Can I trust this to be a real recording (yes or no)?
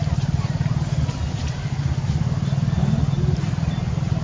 yes